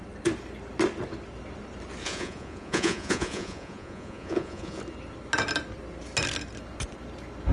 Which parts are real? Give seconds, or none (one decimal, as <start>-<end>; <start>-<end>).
0.0-2.0; 4.8-7.5